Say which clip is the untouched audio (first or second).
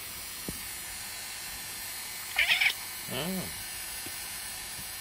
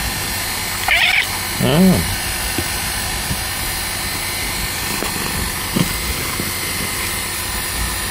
second